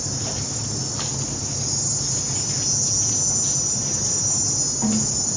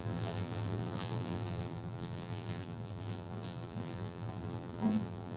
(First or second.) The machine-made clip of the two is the second